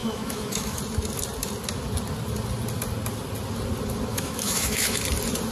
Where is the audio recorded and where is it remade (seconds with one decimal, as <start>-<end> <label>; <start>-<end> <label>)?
0.0-0.8 remade; 0.8-4.1 recorded; 4.1-5.0 remade; 5.0-5.5 recorded